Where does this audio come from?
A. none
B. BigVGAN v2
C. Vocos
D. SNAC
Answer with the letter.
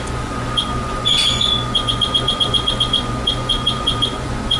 C